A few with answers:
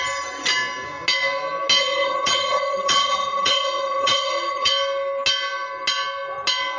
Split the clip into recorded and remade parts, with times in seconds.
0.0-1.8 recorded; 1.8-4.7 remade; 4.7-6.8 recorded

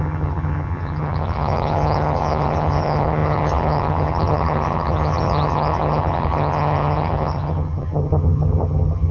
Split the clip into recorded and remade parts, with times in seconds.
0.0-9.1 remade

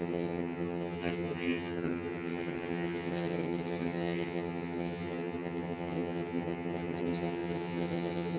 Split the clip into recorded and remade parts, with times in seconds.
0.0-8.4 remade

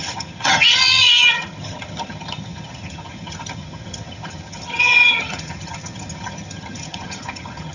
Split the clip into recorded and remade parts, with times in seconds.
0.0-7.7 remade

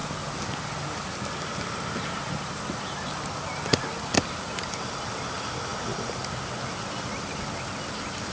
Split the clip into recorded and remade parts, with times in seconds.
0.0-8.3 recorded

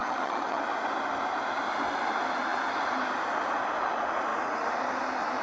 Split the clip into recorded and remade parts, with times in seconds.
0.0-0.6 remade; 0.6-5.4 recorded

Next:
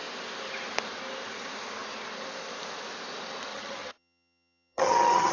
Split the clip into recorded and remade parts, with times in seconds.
0.0-3.5 recorded; 3.5-5.3 remade